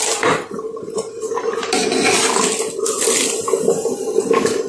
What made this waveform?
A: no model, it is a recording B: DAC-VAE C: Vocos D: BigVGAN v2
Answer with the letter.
A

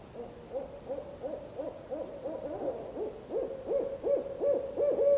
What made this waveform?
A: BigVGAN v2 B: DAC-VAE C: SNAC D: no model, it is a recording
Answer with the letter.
D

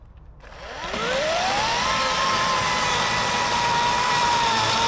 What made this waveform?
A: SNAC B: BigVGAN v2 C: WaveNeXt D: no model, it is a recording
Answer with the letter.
B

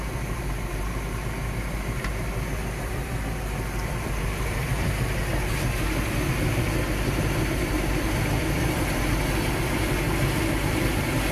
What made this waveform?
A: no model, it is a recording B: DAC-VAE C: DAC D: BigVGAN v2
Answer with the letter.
D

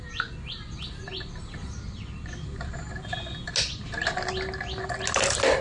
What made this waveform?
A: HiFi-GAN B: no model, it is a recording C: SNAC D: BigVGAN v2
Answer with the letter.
B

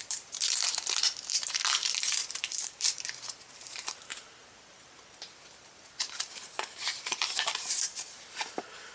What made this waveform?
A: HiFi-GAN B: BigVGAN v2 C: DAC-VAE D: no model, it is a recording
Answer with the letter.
B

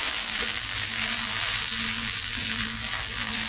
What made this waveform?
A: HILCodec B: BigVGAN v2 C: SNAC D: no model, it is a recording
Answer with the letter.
B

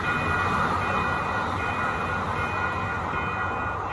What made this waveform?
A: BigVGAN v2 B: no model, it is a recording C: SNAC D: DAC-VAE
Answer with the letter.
B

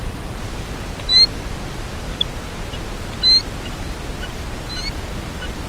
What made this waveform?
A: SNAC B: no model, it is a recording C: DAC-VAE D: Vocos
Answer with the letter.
B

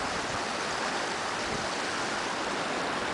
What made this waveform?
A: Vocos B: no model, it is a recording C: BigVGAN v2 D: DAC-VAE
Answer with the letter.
B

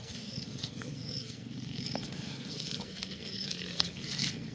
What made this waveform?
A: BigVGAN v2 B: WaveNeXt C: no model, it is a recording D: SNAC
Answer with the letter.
D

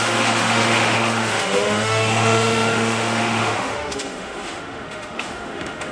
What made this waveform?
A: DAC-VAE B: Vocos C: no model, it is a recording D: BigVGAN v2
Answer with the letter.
A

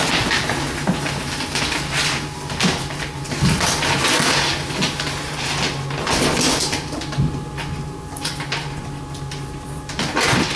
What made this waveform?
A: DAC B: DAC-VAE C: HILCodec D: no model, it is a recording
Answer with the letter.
D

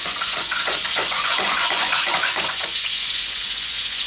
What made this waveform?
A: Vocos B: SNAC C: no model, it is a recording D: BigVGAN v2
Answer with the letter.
A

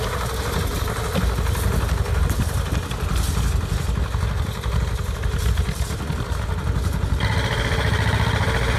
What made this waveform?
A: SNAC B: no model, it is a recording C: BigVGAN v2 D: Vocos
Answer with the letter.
B